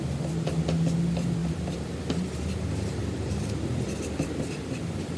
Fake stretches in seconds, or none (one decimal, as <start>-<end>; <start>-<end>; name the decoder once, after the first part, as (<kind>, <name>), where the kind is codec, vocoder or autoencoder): 1.4-2.0 (vocoder, BigVGAN v2); 3.0-4.5